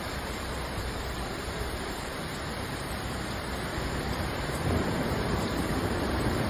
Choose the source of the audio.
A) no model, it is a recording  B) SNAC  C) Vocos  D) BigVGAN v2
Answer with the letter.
D